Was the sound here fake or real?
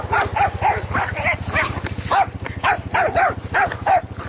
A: real